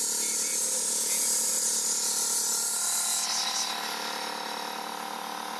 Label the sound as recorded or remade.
recorded